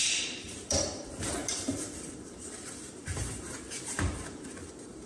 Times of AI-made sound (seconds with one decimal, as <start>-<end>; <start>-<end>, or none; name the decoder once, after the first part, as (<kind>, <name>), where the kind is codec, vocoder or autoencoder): 0.0-5.1 (vocoder, BigVGAN v2)